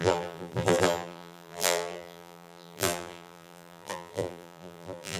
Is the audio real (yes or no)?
no